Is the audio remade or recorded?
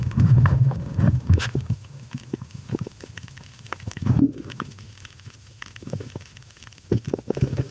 remade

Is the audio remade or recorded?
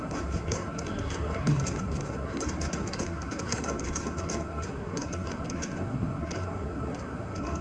remade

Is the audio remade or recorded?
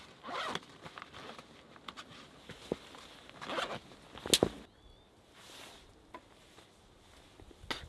recorded